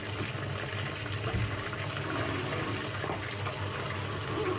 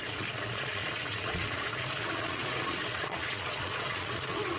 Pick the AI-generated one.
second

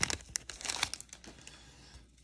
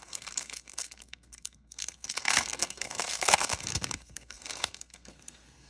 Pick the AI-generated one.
second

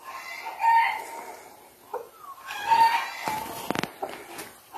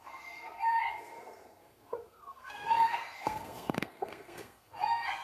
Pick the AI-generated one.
second